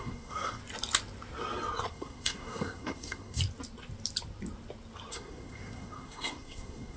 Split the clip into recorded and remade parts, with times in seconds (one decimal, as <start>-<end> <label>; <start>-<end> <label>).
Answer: 0.0-0.6 remade; 0.6-1.9 recorded; 1.9-3.4 remade; 3.4-5.1 recorded; 5.1-7.0 remade